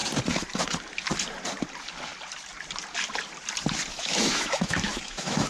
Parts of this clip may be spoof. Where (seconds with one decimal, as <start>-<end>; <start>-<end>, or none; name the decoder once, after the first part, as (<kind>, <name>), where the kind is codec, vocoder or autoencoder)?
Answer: 3.9-5.5 (autoencoder, DAC-VAE)